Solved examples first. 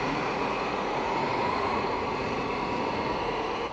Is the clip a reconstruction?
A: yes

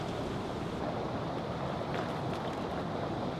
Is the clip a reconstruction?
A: no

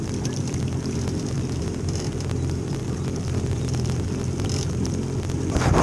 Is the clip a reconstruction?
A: yes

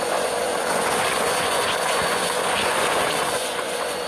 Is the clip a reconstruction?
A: yes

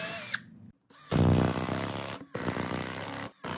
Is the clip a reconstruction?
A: no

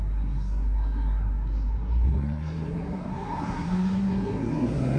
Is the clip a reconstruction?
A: yes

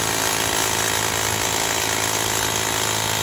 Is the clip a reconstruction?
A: no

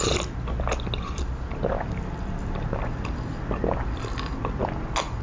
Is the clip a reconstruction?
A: no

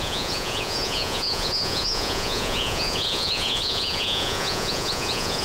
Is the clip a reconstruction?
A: yes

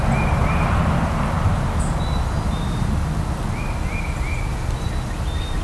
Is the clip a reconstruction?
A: no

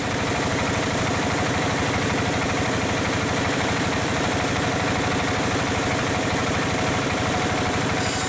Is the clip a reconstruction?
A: yes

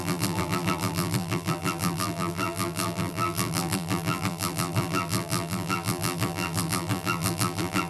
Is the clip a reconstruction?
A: yes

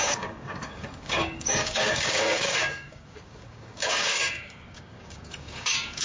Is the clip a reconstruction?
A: yes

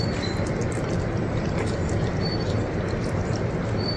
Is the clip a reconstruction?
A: no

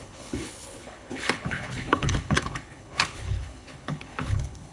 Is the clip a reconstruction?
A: yes